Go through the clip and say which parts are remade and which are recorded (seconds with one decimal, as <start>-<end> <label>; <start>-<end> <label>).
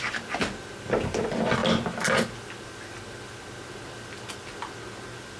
0.0-5.4 recorded